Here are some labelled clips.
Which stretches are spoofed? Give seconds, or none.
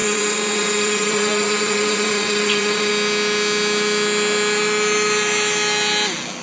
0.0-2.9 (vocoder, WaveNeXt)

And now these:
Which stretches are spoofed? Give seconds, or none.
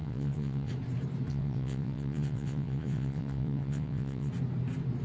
0.0-0.7 (vocoder, WaveNeXt); 1.3-4.3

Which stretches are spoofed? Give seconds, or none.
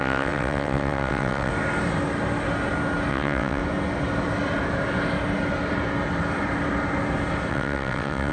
0.0-1.5 (vocoder, WaveNeXt); 3.1-3.6; 7.5-8.3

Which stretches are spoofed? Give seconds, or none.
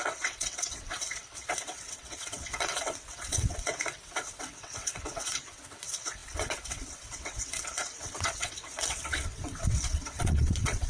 0.0-10.9 (vocoder, WaveNeXt)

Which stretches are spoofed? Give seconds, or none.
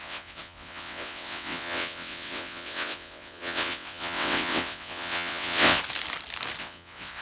0.0-5.8 (vocoder, WaveNeXt); 6.6-7.2